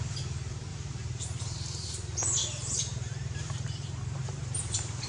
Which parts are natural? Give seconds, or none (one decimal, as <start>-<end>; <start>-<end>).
0.0-0.7; 1.4-2.4